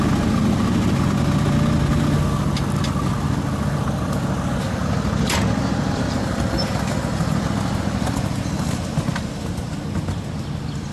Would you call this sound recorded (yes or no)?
yes